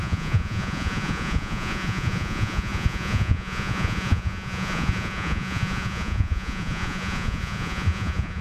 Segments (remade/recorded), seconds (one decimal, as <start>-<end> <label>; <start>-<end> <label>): 0.0-8.4 remade